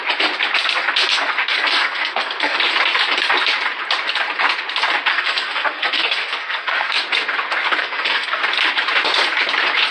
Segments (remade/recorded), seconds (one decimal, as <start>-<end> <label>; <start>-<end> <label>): 0.0-1.1 recorded; 1.1-2.6 remade; 2.6-5.1 recorded; 5.1-7.0 remade; 7.0-7.8 recorded; 7.8-8.4 remade; 8.4-9.9 recorded